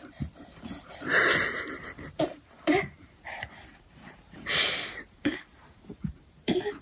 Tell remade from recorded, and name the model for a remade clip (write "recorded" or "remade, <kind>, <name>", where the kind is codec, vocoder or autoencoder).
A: remade, vocoder, BigVGAN v2